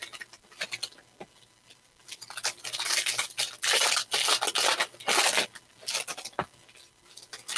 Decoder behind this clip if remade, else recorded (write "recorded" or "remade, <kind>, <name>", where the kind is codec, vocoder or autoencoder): recorded